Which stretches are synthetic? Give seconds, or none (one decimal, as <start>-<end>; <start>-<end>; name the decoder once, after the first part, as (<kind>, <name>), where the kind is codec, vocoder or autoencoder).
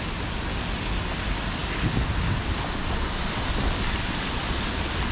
none